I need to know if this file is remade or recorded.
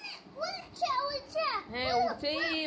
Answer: remade